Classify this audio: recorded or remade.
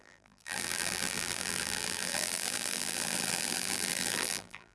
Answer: remade